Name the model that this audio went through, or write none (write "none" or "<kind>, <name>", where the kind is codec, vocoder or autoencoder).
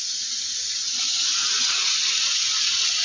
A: vocoder, Vocos